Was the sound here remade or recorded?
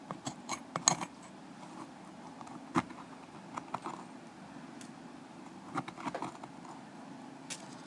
recorded